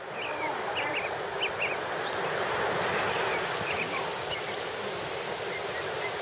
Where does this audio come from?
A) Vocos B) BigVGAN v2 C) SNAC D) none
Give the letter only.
B